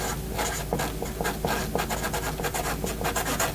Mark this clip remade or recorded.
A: recorded